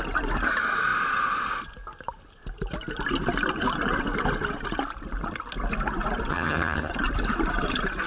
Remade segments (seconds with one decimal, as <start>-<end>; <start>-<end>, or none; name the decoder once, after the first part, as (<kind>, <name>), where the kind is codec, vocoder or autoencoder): 6.3-6.9 (vocoder, HiFi-GAN)